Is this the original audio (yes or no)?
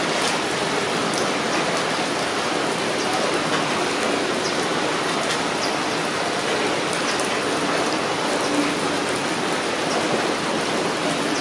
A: yes